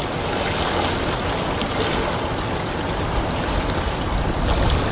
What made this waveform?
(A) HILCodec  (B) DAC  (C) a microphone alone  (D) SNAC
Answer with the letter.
C